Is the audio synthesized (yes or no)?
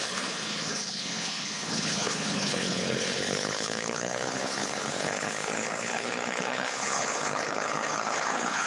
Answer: yes